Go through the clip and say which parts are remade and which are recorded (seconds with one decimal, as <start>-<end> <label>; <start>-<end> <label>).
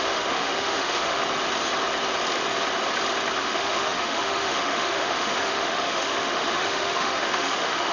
0.0-1.2 remade; 1.2-3.4 recorded; 3.4-7.9 remade